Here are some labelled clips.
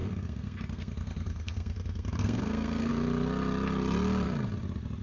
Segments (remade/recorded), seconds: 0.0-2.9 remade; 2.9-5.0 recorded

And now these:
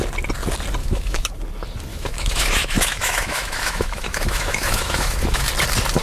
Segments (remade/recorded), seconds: 0.0-0.8 recorded; 0.8-1.3 remade; 1.3-1.9 recorded; 1.9-5.5 remade; 5.5-6.0 recorded

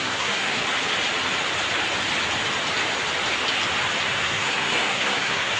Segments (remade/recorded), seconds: 0.0-0.6 remade; 0.6-4.0 recorded; 4.0-5.6 remade

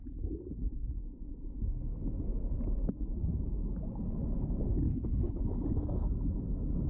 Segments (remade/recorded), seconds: 0.0-4.9 recorded; 4.9-5.4 remade; 5.4-6.9 recorded

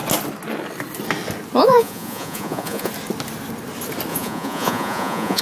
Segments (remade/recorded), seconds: 0.0-1.6 recorded; 1.6-2.9 remade; 2.9-4.1 recorded; 4.1-5.4 remade

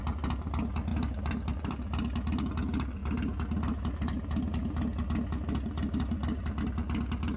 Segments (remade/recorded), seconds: 0.0-7.4 recorded